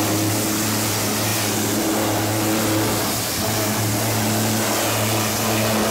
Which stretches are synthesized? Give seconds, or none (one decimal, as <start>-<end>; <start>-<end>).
none